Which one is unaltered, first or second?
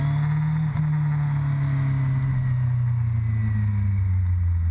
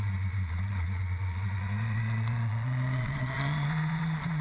first